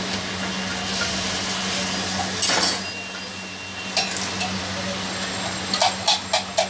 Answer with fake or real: real